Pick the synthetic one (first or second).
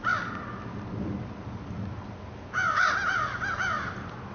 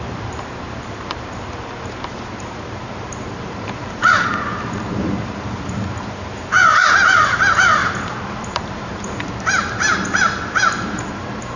second